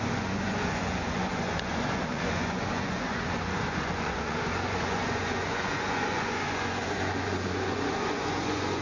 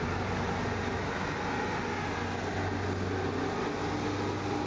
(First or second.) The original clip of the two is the second